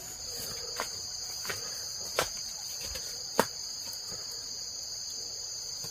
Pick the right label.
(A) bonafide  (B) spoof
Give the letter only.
B